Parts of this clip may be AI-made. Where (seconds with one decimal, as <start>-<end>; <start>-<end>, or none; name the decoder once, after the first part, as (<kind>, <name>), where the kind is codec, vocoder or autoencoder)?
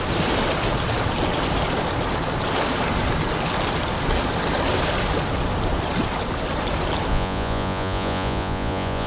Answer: 7.1-9.1 (vocoder, Vocos)